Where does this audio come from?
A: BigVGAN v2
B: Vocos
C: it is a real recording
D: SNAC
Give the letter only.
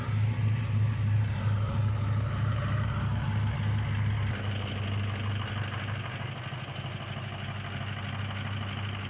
C